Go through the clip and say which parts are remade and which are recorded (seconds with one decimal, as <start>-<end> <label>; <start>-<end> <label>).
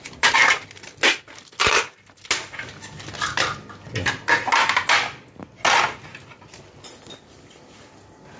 0.0-8.4 recorded